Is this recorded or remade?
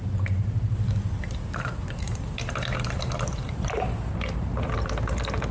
remade